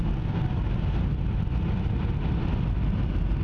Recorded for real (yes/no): yes